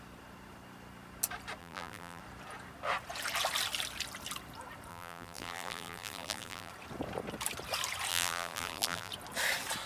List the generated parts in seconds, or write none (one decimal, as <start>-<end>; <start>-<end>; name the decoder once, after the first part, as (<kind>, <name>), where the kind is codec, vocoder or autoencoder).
1.6-2.2 (vocoder, BigVGAN v2); 4.9-6.7; 8.1-9.1